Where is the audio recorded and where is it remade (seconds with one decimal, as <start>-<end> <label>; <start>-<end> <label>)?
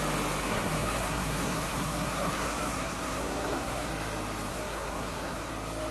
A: 0.0-0.4 recorded; 0.4-3.9 remade; 3.9-4.5 recorded; 4.5-5.5 remade; 5.5-5.9 recorded